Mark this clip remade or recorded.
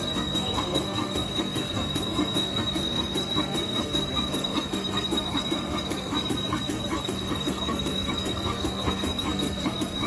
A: remade